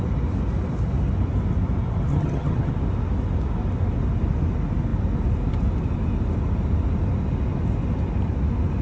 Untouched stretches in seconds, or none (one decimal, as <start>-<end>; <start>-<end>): 0.0-2.1; 2.7-8.8